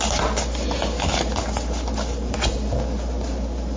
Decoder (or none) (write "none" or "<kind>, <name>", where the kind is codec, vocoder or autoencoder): none